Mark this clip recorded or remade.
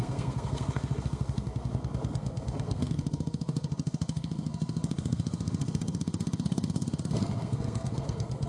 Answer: remade